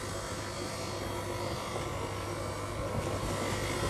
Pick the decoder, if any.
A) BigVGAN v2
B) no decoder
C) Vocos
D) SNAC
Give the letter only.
B